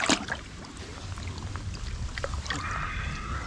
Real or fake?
real